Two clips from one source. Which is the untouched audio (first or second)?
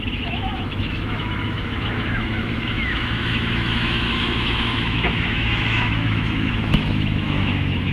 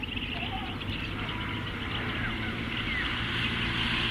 second